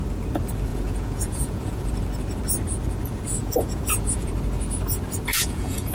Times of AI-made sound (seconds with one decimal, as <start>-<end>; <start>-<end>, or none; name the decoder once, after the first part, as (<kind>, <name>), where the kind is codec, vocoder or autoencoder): 0.7-1.9 (vocoder, Vocos); 3.4-4.3; 5.3-5.9